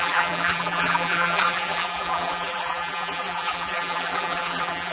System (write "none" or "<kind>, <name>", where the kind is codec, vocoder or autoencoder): vocoder, BigVGAN v2